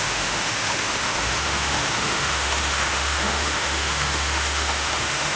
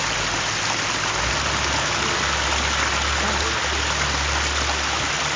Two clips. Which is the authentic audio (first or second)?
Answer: second